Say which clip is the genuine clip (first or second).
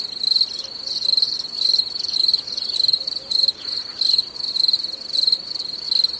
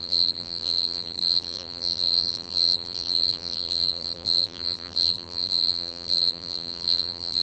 first